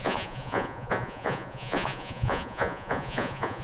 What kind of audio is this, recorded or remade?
remade